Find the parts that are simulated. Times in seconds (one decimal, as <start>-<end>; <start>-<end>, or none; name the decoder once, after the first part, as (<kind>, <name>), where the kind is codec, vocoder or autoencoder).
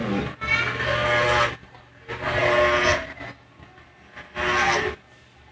none